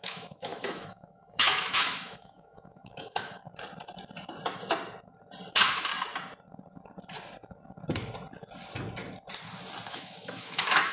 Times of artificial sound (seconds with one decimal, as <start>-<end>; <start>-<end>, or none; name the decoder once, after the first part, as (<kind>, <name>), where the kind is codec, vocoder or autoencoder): 0.0-3.4 (autoencoder, DAC-VAE); 5.5-5.9; 9.9-10.9